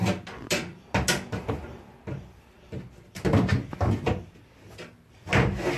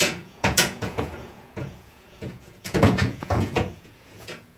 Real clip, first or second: first